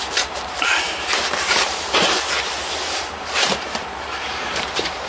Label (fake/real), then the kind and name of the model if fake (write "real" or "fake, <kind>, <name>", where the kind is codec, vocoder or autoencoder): fake, vocoder, BigVGAN v2